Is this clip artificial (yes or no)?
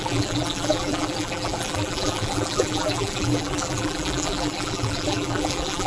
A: yes